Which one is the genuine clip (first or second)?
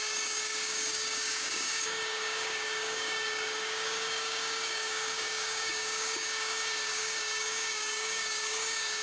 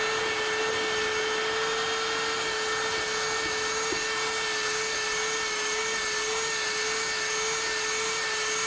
second